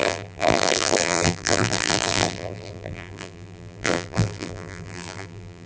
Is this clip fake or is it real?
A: fake